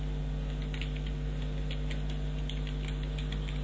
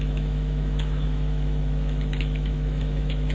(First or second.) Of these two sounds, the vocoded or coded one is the second